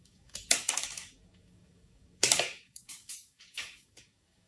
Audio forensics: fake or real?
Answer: fake